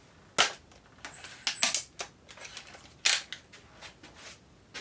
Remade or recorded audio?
recorded